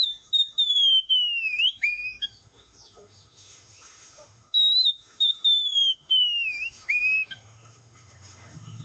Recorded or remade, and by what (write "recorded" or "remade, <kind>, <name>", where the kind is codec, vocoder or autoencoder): remade, autoencoder, DAC-VAE